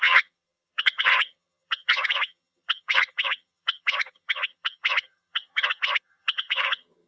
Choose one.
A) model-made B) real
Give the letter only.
A